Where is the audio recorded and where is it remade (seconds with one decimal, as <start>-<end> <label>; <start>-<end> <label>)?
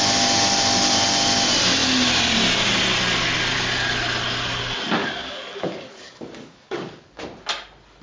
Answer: 0.0-5.0 recorded; 5.0-7.2 remade; 7.2-8.0 recorded